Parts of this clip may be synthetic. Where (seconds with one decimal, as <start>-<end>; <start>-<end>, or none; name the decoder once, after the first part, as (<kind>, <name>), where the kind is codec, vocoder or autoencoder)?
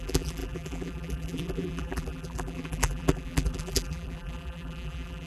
0.0-5.3 (vocoder, BigVGAN v2)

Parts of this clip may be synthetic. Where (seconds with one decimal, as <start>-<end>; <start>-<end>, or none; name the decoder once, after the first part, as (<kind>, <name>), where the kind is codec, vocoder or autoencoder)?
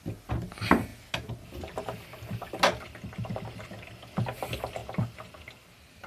none